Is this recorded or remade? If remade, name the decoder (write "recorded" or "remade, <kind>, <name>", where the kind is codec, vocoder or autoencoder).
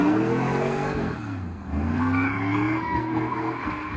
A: remade, codec, SNAC